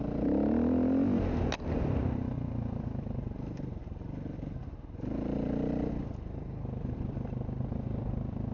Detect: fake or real real